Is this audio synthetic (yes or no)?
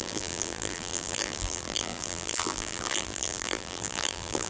yes